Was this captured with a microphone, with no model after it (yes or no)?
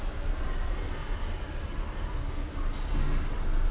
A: yes